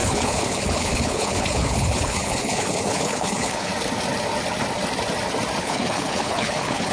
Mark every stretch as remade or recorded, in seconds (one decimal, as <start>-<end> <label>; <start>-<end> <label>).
0.0-3.7 remade; 3.7-5.6 recorded; 5.6-6.9 remade